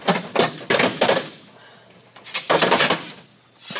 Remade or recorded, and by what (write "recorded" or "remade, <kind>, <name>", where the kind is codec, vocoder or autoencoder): recorded